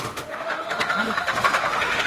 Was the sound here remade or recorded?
remade